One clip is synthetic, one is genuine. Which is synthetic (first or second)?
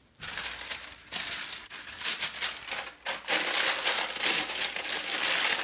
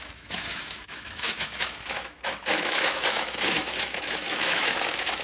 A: second